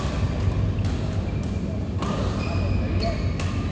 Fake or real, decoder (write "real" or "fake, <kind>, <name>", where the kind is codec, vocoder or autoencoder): real